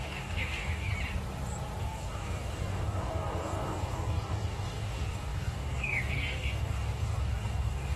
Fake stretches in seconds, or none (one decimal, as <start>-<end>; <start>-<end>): 0.0-0.9; 1.8-8.0